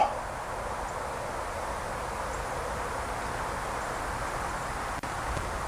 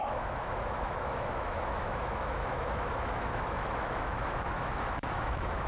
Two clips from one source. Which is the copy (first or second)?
second